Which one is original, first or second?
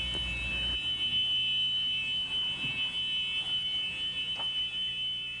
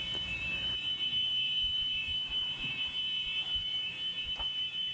first